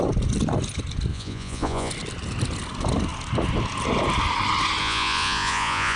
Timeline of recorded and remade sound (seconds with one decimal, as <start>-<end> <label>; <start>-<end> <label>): 0.0-1.1 recorded; 1.1-1.9 remade; 1.9-4.8 recorded; 4.8-6.0 remade